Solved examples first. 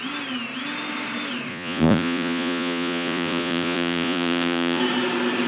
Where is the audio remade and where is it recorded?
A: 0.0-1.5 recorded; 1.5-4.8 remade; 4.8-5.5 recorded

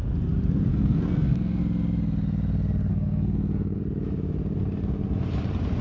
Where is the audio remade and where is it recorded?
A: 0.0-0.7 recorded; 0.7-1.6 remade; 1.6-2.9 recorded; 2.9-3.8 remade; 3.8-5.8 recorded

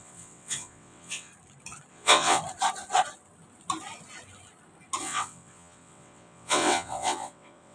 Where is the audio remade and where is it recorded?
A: 0.0-1.3 remade; 1.3-1.9 recorded; 1.9-2.4 remade; 2.4-5.0 recorded; 5.0-7.7 remade

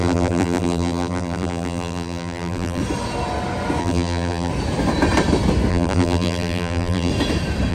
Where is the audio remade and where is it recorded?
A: 0.0-2.8 remade; 2.8-3.8 recorded; 3.8-4.5 remade; 4.5-5.7 recorded; 5.7-7.1 remade; 7.1-7.7 recorded

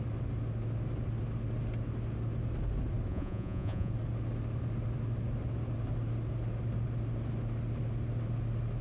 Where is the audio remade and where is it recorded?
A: 0.0-3.1 recorded; 3.1-3.9 remade; 3.9-8.8 recorded

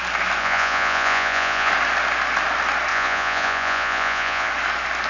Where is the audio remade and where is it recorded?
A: 0.0-0.4 recorded; 0.4-1.7 remade; 1.7-2.9 recorded; 2.9-4.5 remade; 4.5-5.1 recorded

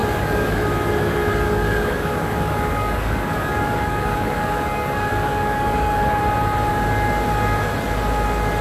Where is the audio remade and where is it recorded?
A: 0.0-0.7 remade; 0.7-1.3 recorded; 1.3-6.2 remade; 6.2-8.6 recorded

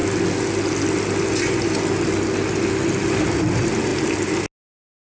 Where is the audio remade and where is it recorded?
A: 0.0-5.0 recorded